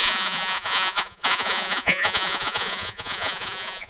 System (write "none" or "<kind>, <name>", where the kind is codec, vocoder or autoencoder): vocoder, Vocos